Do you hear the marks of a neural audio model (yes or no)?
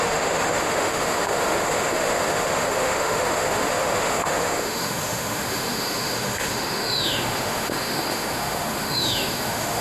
yes